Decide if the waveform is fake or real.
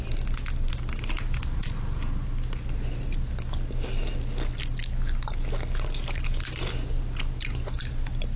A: real